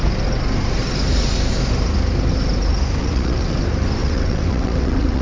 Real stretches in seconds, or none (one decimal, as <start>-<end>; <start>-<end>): 0.0-3.0; 3.6-4.0